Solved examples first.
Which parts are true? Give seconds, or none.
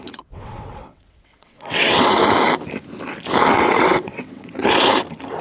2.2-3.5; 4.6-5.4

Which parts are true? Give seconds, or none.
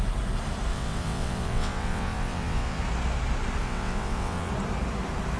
0.0-0.7; 2.8-3.6; 4.5-5.4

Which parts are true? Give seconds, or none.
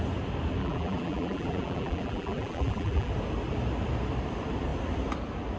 0.0-0.6; 3.1-5.6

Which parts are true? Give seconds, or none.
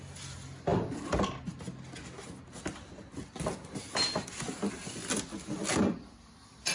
0.0-6.7